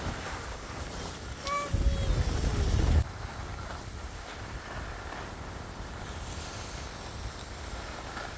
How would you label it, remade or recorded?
recorded